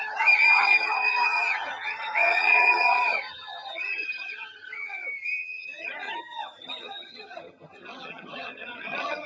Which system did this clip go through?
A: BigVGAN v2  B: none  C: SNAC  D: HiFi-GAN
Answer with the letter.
D